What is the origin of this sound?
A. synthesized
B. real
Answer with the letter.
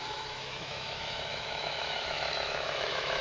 A